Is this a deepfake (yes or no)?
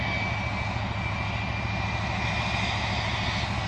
no